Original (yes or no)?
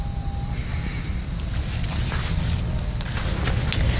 yes